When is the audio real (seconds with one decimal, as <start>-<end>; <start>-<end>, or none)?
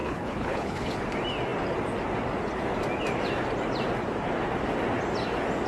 0.9-5.7